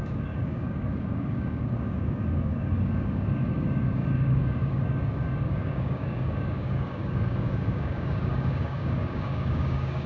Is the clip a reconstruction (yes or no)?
yes